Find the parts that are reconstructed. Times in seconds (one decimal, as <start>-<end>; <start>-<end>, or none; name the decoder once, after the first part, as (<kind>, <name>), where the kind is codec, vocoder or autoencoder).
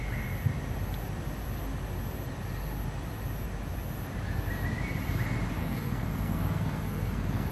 5.6-7.5 (codec, SNAC)